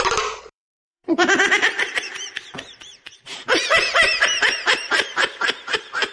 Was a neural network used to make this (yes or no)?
yes